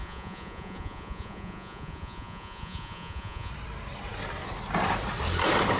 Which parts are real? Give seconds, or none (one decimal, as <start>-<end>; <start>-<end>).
3.5-5.8